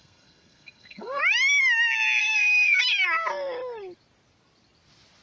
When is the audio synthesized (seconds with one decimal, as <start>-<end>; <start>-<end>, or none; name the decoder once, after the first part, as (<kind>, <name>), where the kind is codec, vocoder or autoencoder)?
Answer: 0.0-1.2 (codec, SNAC); 2.2-2.8